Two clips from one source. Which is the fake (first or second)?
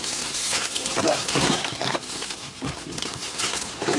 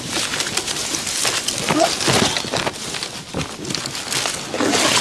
first